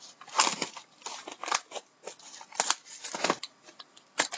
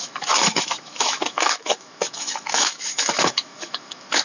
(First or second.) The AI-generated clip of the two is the second